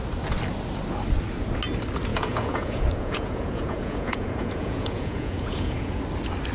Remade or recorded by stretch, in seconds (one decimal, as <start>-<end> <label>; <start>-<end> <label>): 0.0-2.1 recorded; 2.1-6.0 remade; 6.0-6.5 recorded